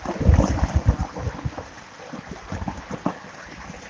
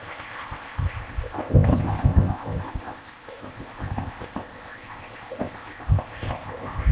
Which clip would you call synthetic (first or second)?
second